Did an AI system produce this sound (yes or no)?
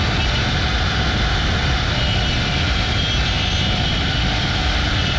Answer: no